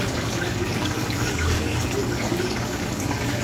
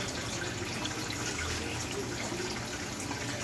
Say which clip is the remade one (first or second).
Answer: first